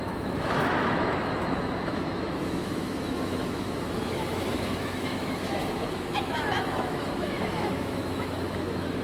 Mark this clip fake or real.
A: fake